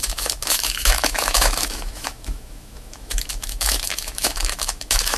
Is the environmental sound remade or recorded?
remade